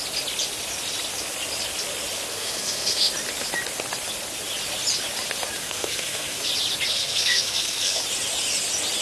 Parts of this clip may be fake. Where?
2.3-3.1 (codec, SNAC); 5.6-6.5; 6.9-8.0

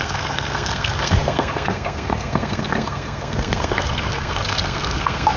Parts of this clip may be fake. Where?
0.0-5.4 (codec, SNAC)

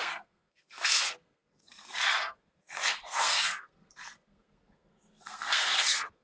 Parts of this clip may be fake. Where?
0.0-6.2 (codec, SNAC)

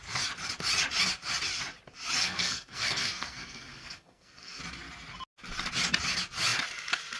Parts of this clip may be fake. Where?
2.2-4.6 (codec, SNAC)

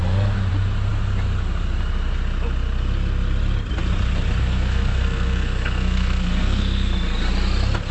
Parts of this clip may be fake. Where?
4.4-6.9 (codec, SNAC)

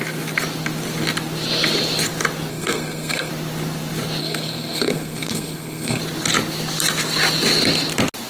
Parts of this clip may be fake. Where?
2.5-3.3 (codec, SNAC); 4.2-6.0

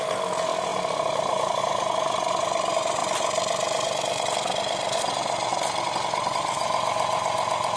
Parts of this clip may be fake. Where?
none